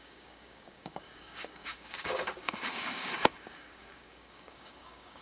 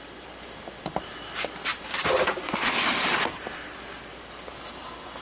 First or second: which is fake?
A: first